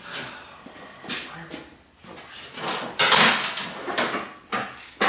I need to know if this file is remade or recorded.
recorded